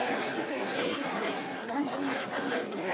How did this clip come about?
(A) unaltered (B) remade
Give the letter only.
B